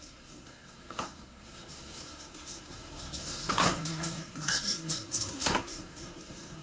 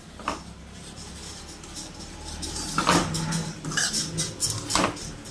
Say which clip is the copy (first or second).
first